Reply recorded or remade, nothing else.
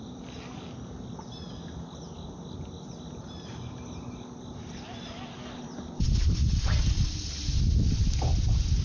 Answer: recorded